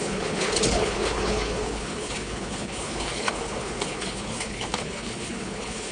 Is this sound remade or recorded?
remade